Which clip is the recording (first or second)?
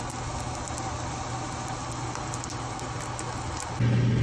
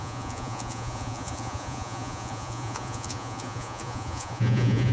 first